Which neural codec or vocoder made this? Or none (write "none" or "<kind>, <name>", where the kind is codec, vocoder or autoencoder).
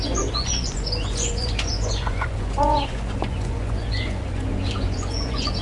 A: vocoder, Vocos